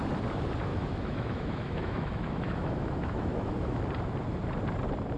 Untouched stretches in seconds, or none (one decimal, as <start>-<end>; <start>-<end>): 0.0-0.7; 3.8-5.2